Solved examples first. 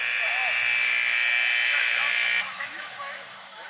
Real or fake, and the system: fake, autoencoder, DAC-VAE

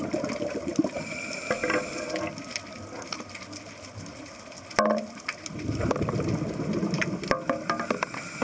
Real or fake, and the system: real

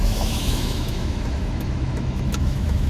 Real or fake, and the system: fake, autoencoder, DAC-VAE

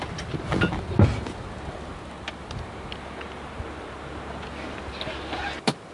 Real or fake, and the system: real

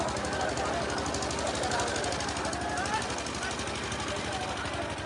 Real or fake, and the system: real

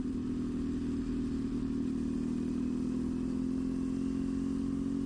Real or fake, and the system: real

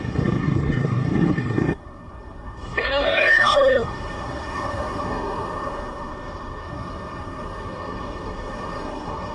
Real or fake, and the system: fake, codec, SNAC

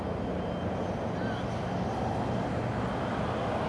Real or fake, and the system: real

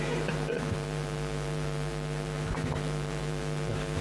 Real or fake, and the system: fake, vocoder, BigVGAN v2